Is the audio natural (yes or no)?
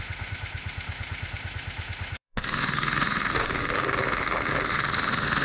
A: no